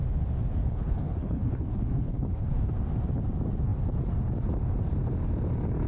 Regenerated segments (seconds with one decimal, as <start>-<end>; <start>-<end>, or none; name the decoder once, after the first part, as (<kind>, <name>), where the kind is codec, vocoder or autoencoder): 0.6-2.7 (codec, HILCodec)